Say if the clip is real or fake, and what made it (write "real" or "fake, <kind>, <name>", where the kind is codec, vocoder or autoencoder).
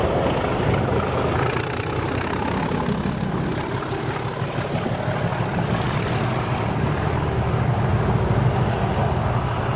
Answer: real